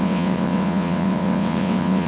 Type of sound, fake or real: fake